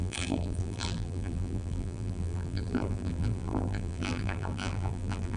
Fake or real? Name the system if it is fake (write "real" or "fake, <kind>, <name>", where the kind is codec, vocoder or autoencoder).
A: fake, vocoder, BigVGAN v2